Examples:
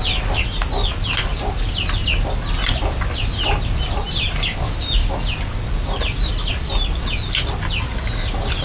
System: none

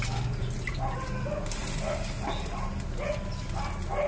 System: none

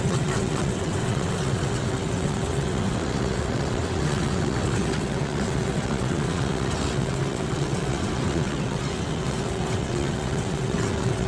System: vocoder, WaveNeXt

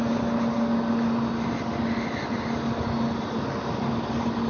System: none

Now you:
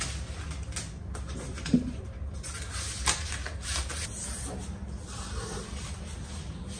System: none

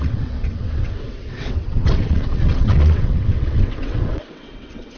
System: vocoder, WaveNeXt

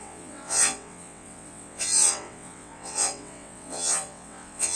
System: vocoder, WaveNeXt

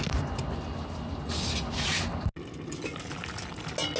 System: none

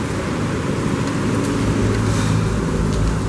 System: none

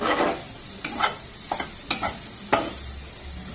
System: none